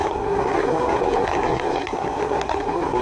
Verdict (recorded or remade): remade